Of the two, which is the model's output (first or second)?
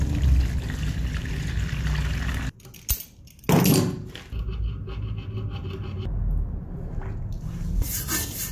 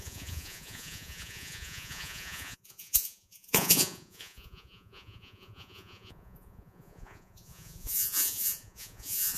second